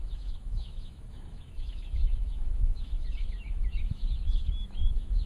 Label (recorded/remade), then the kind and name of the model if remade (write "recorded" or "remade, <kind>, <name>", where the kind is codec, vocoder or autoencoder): remade, autoencoder, DAC-VAE